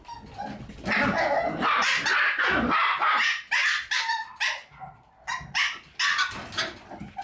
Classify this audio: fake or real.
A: real